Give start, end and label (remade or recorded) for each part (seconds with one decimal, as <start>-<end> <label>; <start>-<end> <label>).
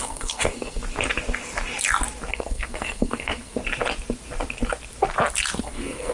0.0-0.8 remade; 0.8-2.3 recorded; 2.3-3.6 remade; 3.6-5.6 recorded; 5.6-6.1 remade